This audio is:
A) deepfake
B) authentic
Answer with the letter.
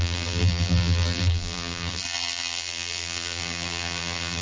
A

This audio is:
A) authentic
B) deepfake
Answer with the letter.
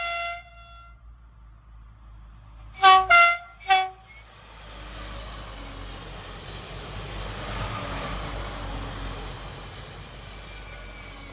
A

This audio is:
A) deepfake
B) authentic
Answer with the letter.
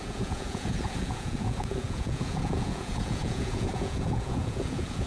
A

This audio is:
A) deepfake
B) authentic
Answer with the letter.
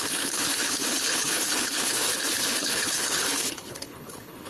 A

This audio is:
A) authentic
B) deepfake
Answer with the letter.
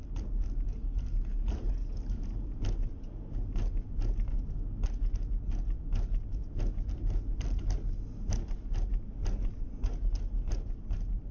A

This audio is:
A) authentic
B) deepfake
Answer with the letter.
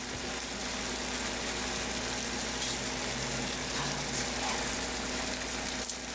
A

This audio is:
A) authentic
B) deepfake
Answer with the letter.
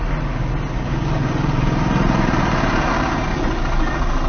A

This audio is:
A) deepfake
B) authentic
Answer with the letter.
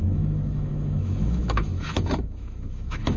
A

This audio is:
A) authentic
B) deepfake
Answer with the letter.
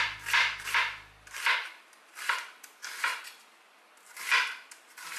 A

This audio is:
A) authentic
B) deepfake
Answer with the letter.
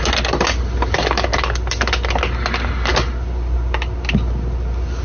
A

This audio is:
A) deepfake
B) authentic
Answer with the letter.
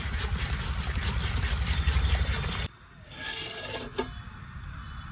B